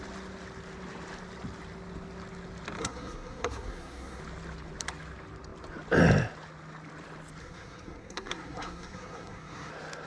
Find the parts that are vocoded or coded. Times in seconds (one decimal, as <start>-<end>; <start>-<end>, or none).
2.8-4.2; 7.4-9.7